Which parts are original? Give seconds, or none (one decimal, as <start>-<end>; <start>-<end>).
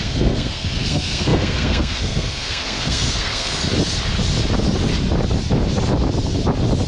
3.6-6.9